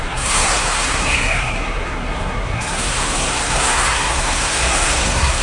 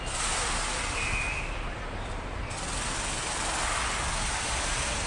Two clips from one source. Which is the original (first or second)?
second